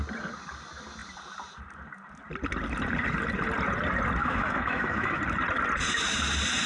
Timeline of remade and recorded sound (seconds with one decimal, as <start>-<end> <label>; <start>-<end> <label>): 0.0-4.2 recorded; 4.2-5.2 remade; 5.2-6.7 recorded